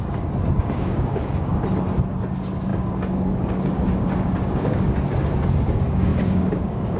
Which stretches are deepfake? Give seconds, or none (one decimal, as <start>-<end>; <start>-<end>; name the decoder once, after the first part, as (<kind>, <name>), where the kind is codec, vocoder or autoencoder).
0.0-1.5 (codec, DAC); 2.3-7.0